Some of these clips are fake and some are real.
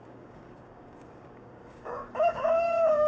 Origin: fake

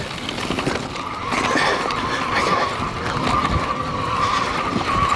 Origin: real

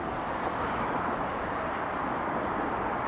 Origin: real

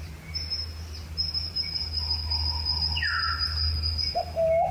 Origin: real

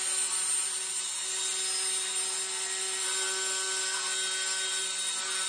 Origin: real